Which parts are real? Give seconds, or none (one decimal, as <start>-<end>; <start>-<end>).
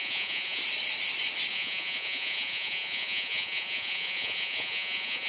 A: 0.6-1.5